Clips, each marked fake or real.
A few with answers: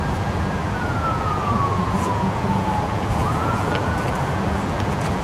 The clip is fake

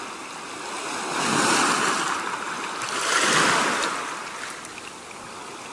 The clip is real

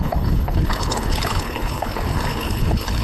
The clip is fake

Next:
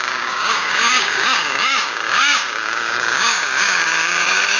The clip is fake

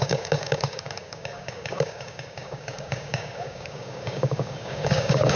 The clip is fake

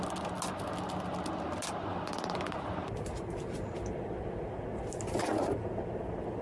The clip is real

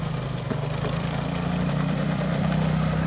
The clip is fake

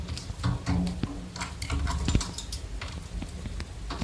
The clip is real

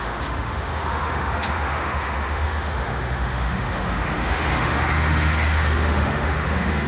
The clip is fake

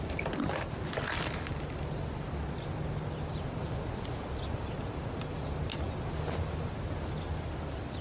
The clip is real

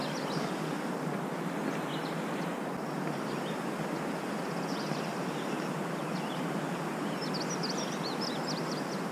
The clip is real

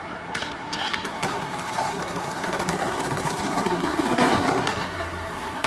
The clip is fake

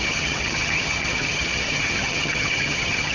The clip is fake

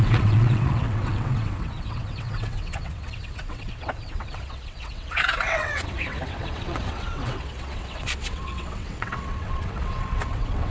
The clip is fake